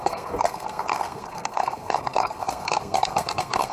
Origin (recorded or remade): remade